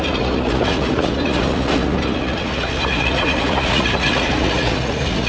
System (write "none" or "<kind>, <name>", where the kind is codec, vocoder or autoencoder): vocoder, Vocos